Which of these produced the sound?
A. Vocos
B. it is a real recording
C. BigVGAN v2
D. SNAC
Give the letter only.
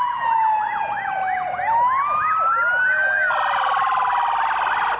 B